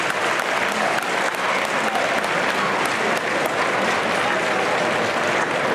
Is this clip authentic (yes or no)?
yes